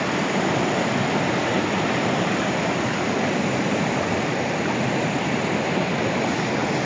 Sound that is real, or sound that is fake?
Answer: real